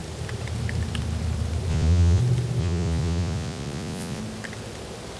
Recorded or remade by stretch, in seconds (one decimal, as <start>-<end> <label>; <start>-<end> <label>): 0.0-1.7 recorded; 1.7-2.2 remade; 2.2-2.6 recorded; 2.6-4.2 remade; 4.2-5.2 recorded